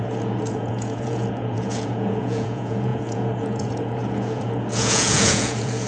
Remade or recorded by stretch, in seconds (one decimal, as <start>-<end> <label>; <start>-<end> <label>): 0.0-5.9 remade